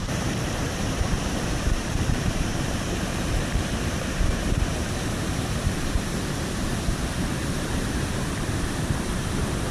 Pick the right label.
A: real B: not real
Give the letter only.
B